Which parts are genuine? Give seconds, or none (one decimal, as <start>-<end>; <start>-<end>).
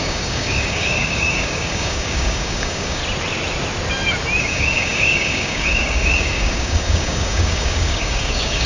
3.0-4.4